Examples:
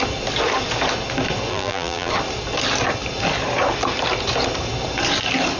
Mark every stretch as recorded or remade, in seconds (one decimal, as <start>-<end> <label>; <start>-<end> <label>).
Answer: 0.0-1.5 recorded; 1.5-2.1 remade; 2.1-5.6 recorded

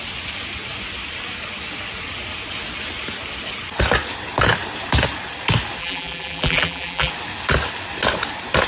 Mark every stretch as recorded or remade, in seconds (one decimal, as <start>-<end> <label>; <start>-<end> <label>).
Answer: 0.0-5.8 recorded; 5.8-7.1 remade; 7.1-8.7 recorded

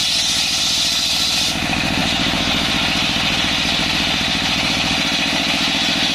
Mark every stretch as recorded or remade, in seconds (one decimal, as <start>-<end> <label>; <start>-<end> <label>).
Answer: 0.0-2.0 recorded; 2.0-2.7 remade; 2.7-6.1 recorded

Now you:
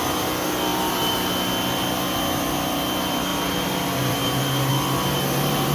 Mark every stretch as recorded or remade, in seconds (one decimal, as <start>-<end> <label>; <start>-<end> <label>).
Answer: 0.0-0.7 recorded; 0.7-1.3 remade; 1.3-3.3 recorded; 3.3-4.7 remade; 4.7-5.7 recorded

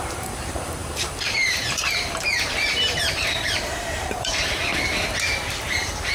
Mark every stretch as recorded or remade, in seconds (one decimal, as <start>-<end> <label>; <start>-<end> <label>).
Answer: 0.0-4.6 remade; 4.6-5.5 recorded; 5.5-6.1 remade